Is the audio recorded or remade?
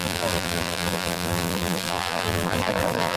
remade